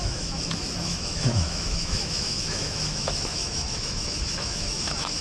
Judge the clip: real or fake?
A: fake